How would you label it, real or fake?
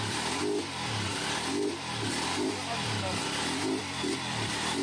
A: fake